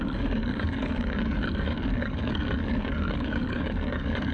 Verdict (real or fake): fake